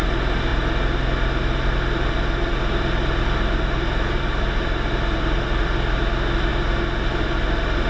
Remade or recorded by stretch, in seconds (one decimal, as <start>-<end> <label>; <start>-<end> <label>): 0.0-7.9 recorded